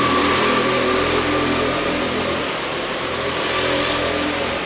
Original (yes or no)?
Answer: yes